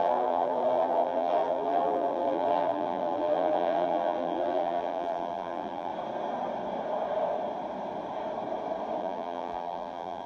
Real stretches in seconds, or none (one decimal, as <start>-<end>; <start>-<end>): 5.9-9.0